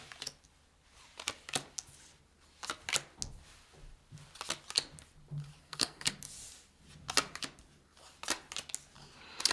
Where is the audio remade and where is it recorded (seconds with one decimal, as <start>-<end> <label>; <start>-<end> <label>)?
0.0-5.6 recorded; 5.6-6.1 remade; 6.1-9.5 recorded